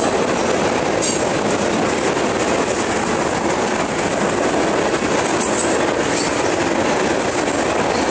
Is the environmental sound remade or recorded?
recorded